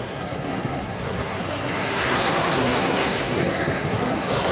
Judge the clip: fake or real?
fake